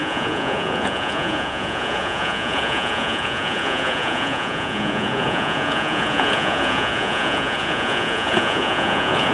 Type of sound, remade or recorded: remade